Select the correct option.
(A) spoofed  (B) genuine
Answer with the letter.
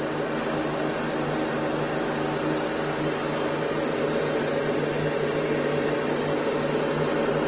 B